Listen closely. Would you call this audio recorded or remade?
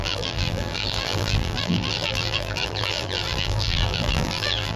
remade